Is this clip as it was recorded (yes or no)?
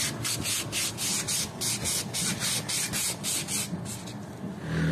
yes